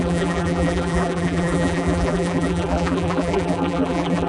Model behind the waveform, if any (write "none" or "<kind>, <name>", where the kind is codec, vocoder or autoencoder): vocoder, BigVGAN v2